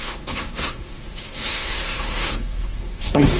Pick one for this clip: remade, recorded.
remade